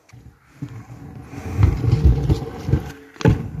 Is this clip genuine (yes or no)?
yes